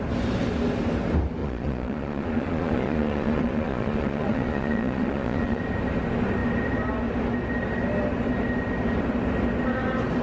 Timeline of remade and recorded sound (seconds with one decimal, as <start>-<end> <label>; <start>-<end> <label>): 0.0-1.4 recorded; 1.4-5.6 remade; 5.6-10.2 recorded